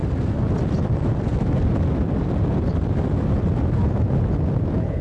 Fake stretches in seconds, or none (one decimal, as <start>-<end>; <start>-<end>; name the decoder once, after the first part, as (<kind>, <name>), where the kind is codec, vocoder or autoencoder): none